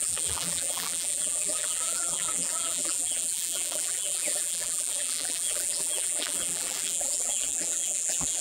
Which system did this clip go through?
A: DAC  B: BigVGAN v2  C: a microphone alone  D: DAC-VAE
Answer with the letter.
B